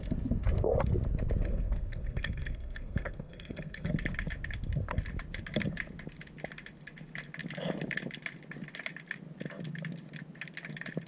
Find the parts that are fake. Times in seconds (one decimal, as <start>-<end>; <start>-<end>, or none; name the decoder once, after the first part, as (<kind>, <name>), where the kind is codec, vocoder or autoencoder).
1.5-3.9 (codec, SNAC)